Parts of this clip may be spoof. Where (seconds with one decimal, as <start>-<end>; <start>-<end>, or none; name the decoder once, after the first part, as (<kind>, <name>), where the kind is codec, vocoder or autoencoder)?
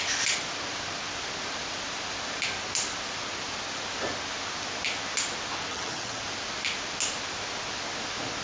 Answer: 5.7-6.2 (vocoder, HiFi-GAN)